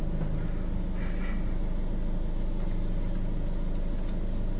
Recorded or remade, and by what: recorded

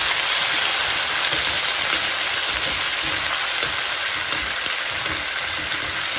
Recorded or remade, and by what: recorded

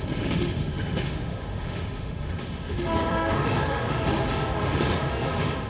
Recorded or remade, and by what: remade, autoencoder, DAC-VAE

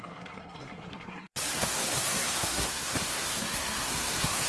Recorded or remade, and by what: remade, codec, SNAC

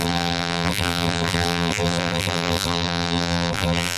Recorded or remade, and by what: remade, vocoder, BigVGAN v2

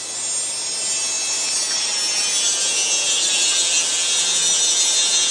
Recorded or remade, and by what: recorded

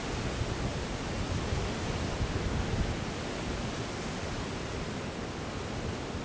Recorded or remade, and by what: recorded